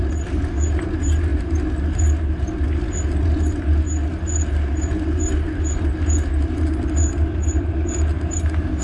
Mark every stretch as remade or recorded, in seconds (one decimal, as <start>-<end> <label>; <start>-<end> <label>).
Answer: 0.0-1.3 recorded; 1.3-2.0 remade; 2.0-8.8 recorded